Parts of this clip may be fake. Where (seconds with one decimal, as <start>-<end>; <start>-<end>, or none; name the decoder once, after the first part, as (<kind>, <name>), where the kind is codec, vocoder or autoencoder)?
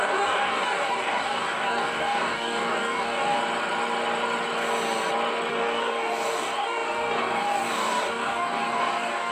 0.0-3.4 (codec, DAC); 5.5-9.3